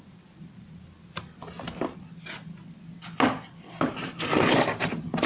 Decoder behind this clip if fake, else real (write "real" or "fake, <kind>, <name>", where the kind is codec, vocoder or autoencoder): real